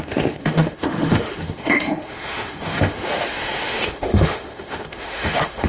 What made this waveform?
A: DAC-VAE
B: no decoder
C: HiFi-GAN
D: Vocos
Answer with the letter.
A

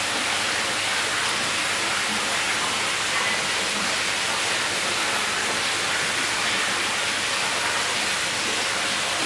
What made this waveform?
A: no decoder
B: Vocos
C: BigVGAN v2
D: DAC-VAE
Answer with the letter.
A